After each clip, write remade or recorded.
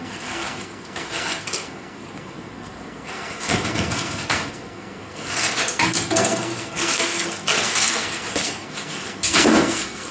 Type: remade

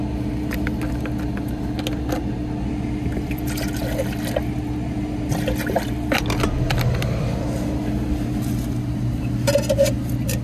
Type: recorded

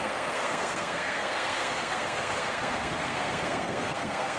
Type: remade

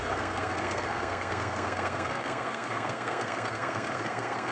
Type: remade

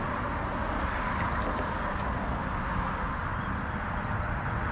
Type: recorded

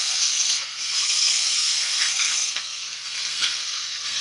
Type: remade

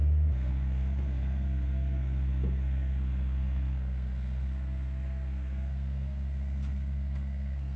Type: remade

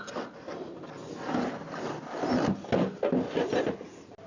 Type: recorded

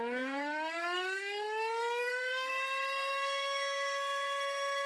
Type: remade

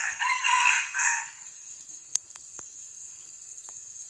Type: remade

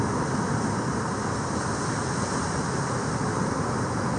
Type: recorded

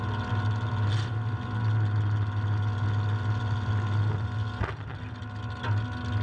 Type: recorded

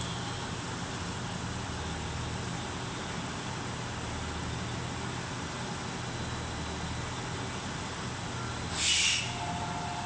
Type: recorded